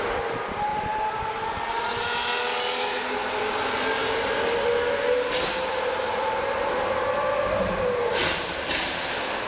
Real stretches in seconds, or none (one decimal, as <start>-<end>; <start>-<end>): 0.0-0.7; 1.6-8.2; 8.7-9.5